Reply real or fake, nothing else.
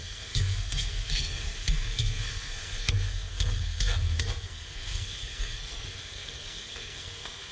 fake